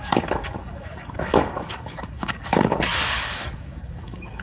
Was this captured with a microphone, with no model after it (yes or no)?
no